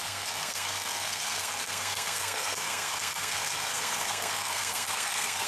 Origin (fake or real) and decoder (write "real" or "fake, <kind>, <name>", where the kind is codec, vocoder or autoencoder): fake, codec, SNAC